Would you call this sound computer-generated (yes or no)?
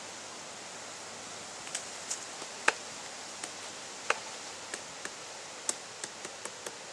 no